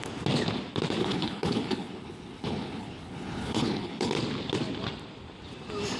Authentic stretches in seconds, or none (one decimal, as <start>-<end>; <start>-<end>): 0.0-1.0; 4.1-6.0